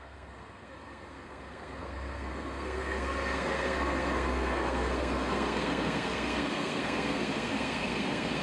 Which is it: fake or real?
fake